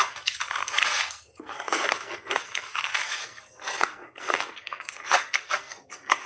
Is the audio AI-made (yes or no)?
yes